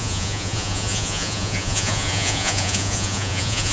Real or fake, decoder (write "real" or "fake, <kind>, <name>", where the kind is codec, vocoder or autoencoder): fake, vocoder, Vocos